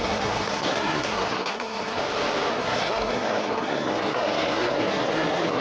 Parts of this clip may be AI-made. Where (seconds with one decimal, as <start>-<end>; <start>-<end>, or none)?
0.0-2.0; 2.5-5.6